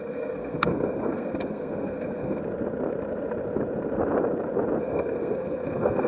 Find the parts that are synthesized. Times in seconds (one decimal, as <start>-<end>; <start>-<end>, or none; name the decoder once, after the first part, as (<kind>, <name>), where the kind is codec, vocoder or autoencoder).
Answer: 0.0-2.4 (codec, SNAC); 4.8-6.1